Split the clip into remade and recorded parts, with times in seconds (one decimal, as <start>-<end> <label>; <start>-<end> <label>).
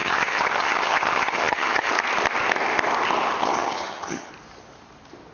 0.0-1.9 remade; 1.9-3.4 recorded; 3.4-4.3 remade; 4.3-5.3 recorded